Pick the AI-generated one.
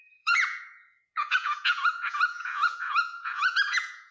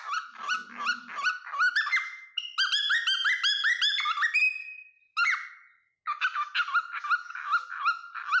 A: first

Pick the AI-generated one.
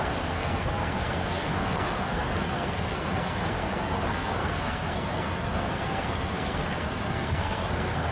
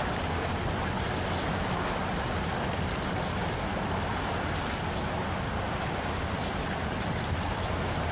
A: first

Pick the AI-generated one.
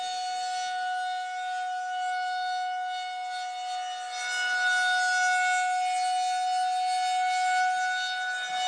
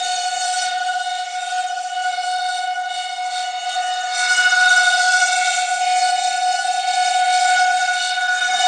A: second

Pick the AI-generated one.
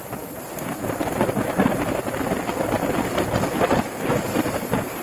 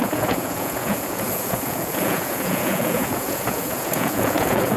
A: second